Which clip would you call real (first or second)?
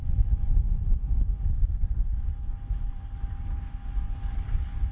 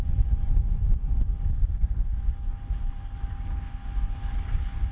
second